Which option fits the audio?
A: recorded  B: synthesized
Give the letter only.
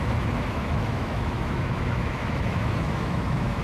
B